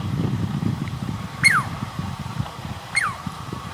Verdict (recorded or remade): remade